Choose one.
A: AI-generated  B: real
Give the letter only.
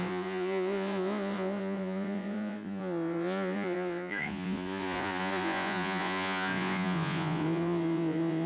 A